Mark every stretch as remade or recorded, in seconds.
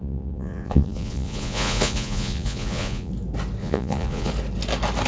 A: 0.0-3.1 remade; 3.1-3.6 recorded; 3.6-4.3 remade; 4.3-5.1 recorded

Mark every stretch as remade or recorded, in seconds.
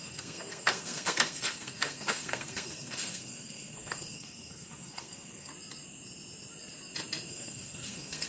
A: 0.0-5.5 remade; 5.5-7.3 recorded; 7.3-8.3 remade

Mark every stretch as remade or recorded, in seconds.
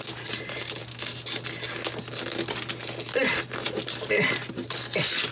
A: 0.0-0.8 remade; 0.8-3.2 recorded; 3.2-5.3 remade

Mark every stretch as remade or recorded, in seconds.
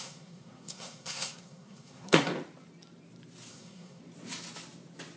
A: 0.0-2.3 remade; 2.3-3.5 recorded; 3.5-4.0 remade; 4.0-5.2 recorded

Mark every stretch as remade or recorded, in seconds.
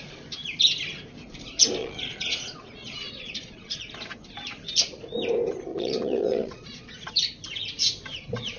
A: 0.0-1.8 recorded; 1.8-3.8 remade; 3.8-5.7 recorded; 5.7-7.1 remade; 7.1-8.6 recorded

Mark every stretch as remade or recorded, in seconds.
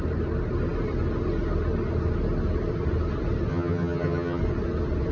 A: 0.0-3.5 recorded; 3.5-4.4 remade; 4.4-5.1 recorded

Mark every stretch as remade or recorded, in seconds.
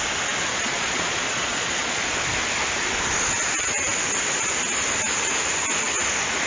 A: 0.0-0.5 recorded; 0.5-2.0 remade; 2.0-6.5 recorded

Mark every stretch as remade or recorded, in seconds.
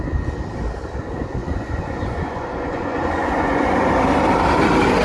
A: 0.0-1.4 recorded; 1.4-3.9 remade; 3.9-5.0 recorded